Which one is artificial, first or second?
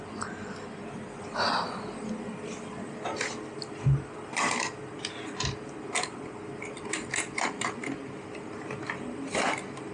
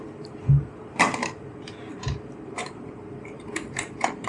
second